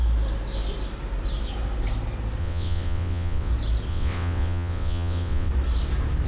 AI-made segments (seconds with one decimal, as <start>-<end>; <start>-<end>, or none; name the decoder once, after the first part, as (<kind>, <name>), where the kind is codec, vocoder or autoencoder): 2.4-3.5 (vocoder, WaveNeXt); 3.9-5.5